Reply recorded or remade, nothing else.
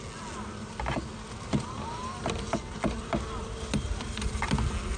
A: recorded